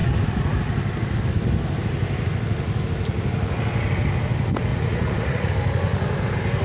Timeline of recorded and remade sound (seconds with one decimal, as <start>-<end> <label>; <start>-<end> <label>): 0.0-4.7 recorded; 4.7-5.5 remade; 5.5-6.6 recorded